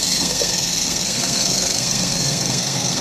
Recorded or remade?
remade